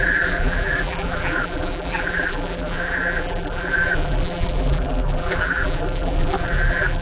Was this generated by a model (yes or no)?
yes